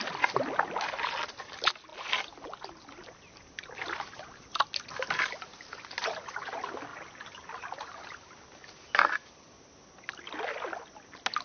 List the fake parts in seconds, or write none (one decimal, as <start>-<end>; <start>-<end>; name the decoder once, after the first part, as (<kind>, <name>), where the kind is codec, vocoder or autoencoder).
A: none